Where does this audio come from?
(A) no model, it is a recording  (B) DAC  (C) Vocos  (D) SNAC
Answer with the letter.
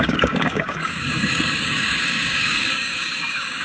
B